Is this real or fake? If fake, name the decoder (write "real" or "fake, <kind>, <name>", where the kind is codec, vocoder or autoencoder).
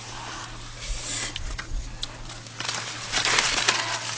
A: real